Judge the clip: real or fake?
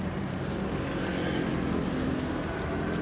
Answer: real